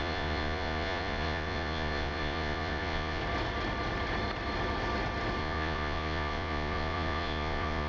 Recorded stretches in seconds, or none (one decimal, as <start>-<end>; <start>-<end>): 3.2-5.4